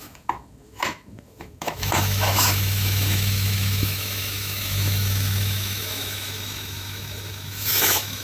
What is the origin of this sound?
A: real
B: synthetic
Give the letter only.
B